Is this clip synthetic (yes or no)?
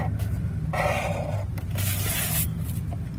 no